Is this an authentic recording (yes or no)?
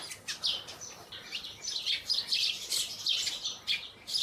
yes